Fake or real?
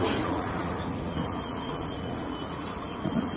fake